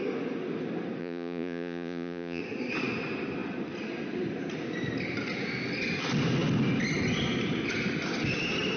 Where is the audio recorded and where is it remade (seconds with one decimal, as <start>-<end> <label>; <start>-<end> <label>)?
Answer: 0.0-1.0 recorded; 1.0-2.4 remade; 2.4-8.8 recorded